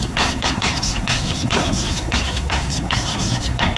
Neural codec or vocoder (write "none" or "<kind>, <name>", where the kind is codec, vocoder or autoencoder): codec, SNAC